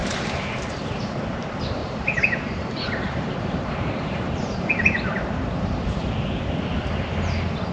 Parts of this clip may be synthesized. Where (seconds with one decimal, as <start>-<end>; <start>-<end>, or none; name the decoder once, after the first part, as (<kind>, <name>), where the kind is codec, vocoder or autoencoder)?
0.0-0.6 (vocoder, BigVGAN v2); 1.8-6.4